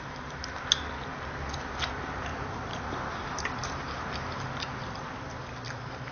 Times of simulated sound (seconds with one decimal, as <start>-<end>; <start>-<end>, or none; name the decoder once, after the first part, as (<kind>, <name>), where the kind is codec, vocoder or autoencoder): 2.3-2.8 (vocoder, BigVGAN v2); 3.2-4.0; 4.7-5.3